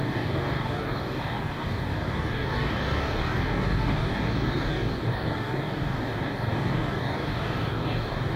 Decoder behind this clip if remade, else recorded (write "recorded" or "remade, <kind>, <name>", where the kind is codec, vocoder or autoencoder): remade, codec, DAC